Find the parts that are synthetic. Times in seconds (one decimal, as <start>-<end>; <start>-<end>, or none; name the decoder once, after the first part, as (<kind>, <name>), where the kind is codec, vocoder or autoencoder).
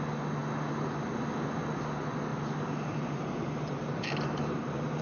2.3-5.0 (vocoder, BigVGAN v2)